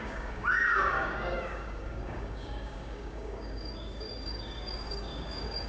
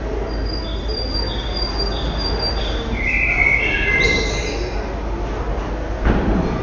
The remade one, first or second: first